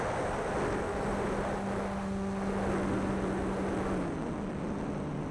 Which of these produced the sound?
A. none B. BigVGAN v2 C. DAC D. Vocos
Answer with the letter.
A